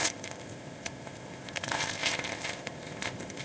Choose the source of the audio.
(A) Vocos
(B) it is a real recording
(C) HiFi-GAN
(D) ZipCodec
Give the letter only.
D